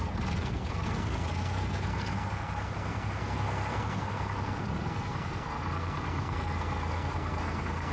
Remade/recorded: remade